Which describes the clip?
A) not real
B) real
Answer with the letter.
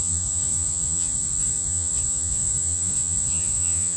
A